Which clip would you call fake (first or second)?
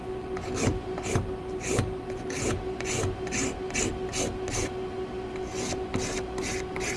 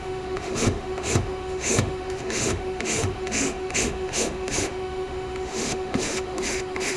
second